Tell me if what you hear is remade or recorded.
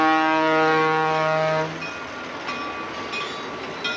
recorded